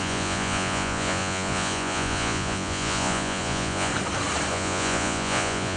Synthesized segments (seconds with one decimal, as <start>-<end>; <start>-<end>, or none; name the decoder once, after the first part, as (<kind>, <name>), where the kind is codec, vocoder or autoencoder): 0.0-3.9 (vocoder, Vocos); 4.5-5.8